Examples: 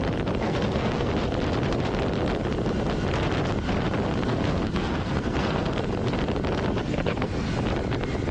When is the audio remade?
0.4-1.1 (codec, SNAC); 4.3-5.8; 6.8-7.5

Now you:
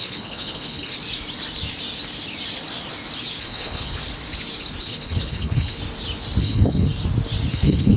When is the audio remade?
0.0-0.9 (codec, HILCodec); 3.4-4.0; 4.8-5.8; 6.4-6.9; 7.5-8.0

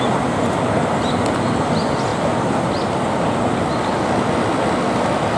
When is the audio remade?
none

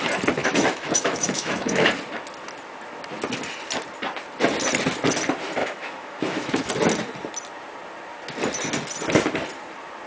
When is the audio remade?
0.4-1.9 (autoencoder, DAC-VAE); 5.6-6.7